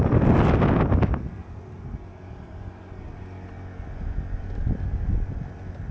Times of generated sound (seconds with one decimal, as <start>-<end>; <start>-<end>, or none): none